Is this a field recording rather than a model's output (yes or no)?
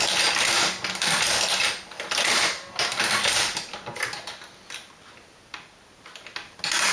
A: yes